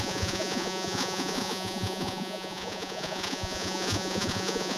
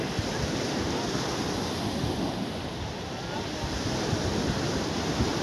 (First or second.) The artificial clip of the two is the first